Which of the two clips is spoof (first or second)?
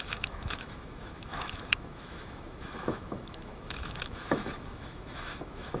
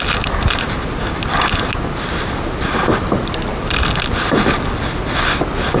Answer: first